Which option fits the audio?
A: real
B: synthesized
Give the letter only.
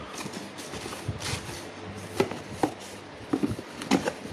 A